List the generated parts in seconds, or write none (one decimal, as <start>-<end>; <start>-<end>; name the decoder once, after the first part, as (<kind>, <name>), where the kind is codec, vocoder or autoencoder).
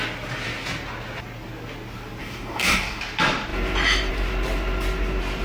2.2-3.0 (codec, DAC)